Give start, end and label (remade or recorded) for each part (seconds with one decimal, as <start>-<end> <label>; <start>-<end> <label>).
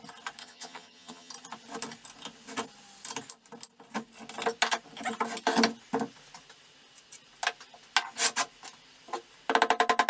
0.0-0.4 recorded; 0.4-1.3 remade; 1.3-10.1 recorded